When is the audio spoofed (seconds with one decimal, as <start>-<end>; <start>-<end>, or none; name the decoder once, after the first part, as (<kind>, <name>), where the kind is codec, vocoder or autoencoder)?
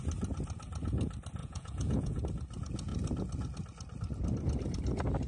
1.4-2.2 (vocoder, Vocos)